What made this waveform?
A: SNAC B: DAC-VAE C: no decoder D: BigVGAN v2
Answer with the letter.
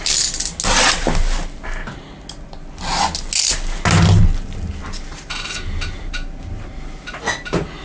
C